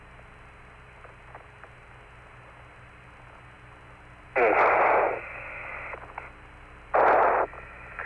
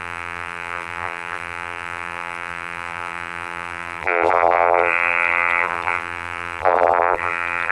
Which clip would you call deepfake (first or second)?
second